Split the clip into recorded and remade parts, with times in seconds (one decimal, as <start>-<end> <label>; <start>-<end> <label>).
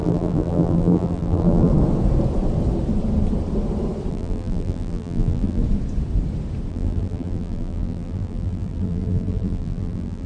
0.0-1.7 remade; 1.7-4.1 recorded; 4.1-5.6 remade; 5.6-6.7 recorded; 6.7-10.3 remade